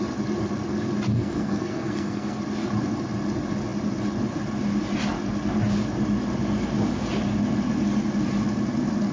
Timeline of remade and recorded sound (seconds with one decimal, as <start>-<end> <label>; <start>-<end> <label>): 0.0-1.1 recorded; 1.1-2.4 remade; 2.4-9.1 recorded